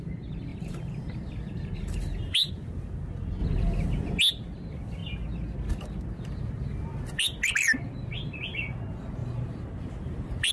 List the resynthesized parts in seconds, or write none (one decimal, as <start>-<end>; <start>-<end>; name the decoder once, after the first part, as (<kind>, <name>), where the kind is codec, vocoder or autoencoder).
0.5-2.5 (vocoder, BigVGAN v2); 3.4-4.2; 9.2-10.5